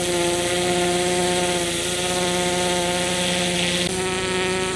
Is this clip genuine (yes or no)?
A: yes